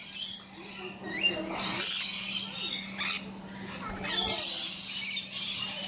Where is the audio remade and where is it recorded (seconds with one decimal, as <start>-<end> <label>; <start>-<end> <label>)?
0.0-1.0 remade; 1.0-4.3 recorded; 4.3-5.9 remade

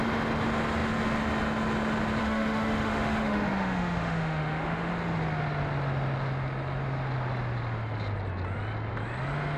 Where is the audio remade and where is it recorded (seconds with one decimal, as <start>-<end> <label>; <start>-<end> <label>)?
0.0-2.2 recorded; 2.2-4.9 remade; 4.9-9.6 recorded

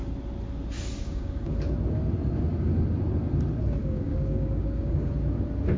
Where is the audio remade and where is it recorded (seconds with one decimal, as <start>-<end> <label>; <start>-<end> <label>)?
0.0-1.0 recorded; 1.0-1.5 remade; 1.5-3.8 recorded; 3.8-5.1 remade; 5.1-5.8 recorded